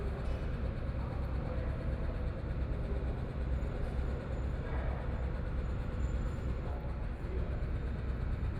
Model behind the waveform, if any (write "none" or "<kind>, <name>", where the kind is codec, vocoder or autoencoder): none